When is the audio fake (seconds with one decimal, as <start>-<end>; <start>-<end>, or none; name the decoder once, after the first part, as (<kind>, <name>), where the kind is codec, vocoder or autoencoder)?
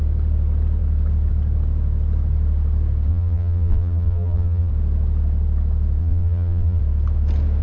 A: 3.1-4.7 (vocoder, BigVGAN v2); 6.0-6.8